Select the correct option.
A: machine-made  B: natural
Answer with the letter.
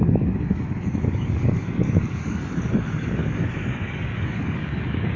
A